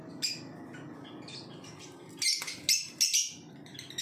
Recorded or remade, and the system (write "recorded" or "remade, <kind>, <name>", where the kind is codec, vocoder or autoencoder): recorded